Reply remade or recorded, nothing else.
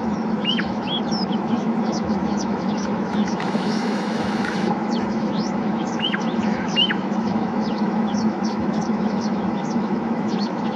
remade